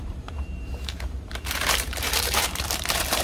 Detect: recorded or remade remade